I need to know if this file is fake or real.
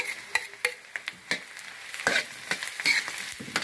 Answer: real